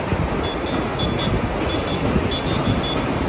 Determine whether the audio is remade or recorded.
recorded